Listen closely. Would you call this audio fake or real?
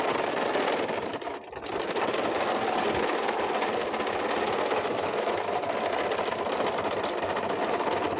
real